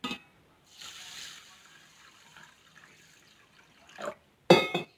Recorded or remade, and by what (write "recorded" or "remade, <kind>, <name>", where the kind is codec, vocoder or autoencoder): recorded